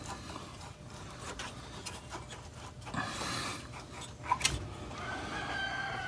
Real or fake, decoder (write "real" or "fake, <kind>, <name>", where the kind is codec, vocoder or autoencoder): real